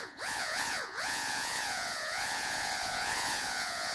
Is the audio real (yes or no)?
no